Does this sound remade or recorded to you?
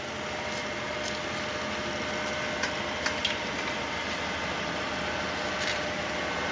recorded